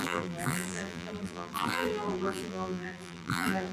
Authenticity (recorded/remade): remade